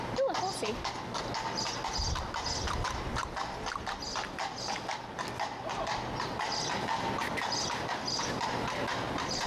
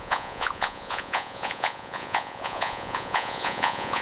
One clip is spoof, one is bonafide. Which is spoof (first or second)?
second